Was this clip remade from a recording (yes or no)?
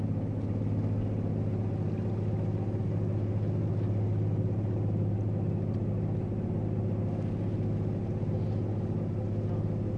no